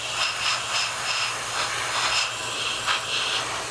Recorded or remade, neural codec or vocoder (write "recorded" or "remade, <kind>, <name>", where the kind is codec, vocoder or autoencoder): recorded